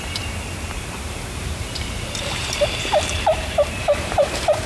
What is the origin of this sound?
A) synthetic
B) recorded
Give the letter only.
A